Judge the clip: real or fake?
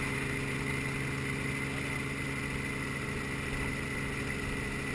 real